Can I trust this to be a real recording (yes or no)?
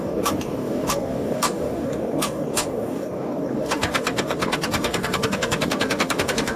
no